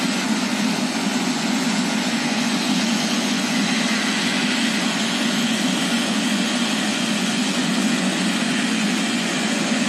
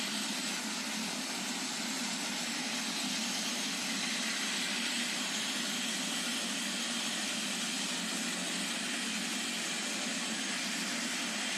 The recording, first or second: second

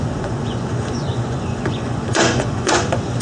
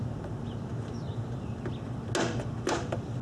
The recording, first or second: second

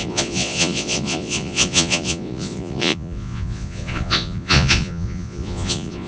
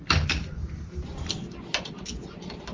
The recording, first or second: second